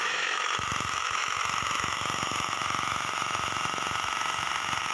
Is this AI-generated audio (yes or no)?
yes